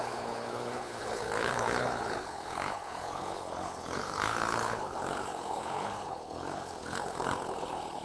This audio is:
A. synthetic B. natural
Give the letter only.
A